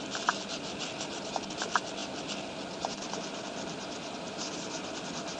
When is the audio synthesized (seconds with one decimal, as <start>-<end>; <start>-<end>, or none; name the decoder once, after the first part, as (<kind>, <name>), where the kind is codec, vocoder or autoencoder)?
none